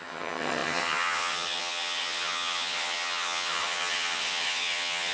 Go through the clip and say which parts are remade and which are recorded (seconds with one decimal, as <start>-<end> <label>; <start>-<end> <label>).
0.0-5.1 remade